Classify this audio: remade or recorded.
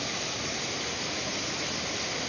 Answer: recorded